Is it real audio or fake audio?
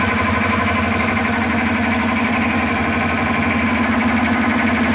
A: real